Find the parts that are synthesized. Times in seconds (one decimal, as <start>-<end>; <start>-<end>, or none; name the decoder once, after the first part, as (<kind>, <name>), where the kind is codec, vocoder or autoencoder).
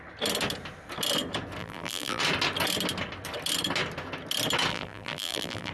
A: 1.6-2.2 (vocoder, BigVGAN v2); 4.7-5.7